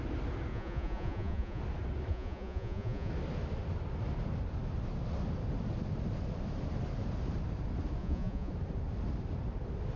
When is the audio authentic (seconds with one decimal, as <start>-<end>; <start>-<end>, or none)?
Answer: 0.0-0.5; 1.6-2.1; 3.1-8.0; 8.5-10.0